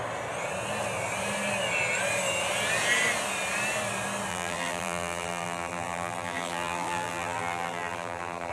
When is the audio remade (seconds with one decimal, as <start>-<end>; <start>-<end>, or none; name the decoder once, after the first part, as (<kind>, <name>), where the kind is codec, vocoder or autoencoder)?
4.3-8.5 (vocoder, BigVGAN v2)